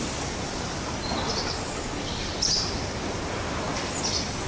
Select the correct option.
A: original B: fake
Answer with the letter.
A